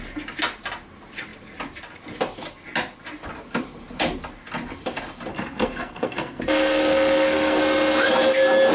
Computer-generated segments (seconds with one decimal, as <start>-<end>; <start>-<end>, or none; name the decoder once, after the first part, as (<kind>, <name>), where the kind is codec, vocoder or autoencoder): 5.3-7.6 (codec, SNAC)

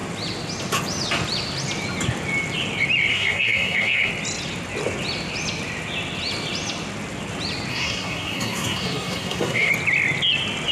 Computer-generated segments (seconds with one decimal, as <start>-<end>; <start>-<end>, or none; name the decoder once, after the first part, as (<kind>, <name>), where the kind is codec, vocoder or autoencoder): 3.1-4.1 (codec, SNAC); 7.7-9.7

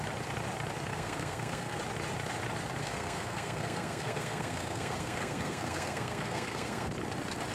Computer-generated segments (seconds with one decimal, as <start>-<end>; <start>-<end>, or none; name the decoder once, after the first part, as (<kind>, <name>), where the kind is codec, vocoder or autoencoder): 0.9-1.8 (codec, SNAC); 2.8-6.9

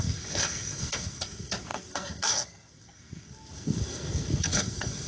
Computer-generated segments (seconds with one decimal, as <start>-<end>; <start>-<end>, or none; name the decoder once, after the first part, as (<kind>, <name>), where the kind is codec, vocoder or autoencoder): 0.0-5.1 (codec, SNAC)

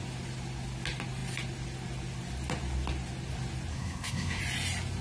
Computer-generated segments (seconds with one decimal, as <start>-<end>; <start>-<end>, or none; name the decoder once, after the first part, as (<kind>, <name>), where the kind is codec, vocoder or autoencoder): 3.7-4.4 (codec, SNAC)